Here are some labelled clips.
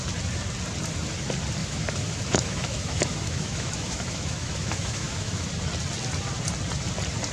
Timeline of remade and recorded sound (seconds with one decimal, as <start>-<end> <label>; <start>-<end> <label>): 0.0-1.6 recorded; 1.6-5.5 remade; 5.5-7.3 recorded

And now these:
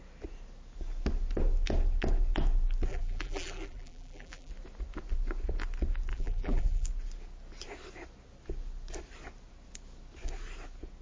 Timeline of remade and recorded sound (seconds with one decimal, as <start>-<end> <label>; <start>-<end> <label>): 0.0-2.9 recorded; 2.9-4.5 remade; 4.5-6.1 recorded; 6.1-6.9 remade; 6.9-11.0 recorded

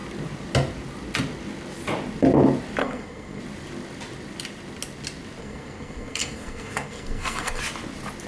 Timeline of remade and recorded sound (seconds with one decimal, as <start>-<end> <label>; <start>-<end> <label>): 0.0-2.8 recorded; 2.8-3.4 remade; 3.4-5.4 recorded; 5.4-7.6 remade; 7.6-8.3 recorded

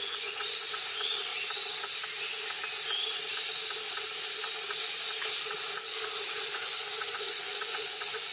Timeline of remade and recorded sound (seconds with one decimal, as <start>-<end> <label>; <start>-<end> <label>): 0.0-1.3 remade; 1.3-6.3 recorded; 6.3-8.3 remade

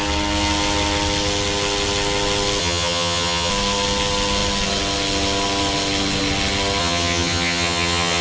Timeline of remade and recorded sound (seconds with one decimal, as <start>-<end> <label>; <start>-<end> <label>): 0.0-2.6 recorded; 2.6-3.5 remade; 3.5-6.8 recorded; 6.8-8.2 remade